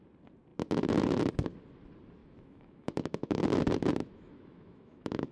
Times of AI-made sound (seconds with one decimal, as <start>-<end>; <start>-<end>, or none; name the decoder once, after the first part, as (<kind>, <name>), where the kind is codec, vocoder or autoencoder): 2.2-3.4 (autoencoder, DAC-VAE); 4.0-5.3